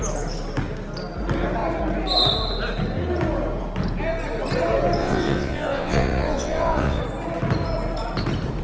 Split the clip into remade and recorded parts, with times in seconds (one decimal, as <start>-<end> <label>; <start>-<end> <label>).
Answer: 0.0-5.0 recorded; 5.0-7.0 remade; 7.0-8.6 recorded